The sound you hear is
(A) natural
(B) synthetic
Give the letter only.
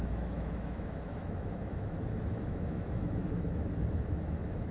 B